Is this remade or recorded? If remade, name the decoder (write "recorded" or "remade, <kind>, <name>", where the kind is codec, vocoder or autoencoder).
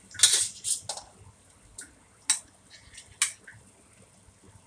recorded